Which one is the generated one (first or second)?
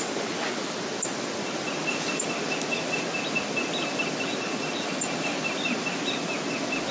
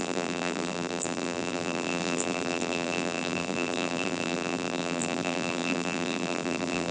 second